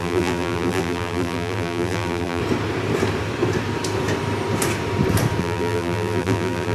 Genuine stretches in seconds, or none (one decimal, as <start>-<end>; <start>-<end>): 2.4-5.4